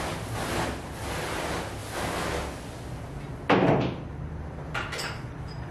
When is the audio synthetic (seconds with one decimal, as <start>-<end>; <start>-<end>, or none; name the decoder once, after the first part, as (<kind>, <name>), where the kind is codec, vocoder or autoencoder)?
none